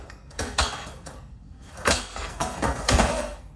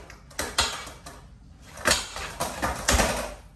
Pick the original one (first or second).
second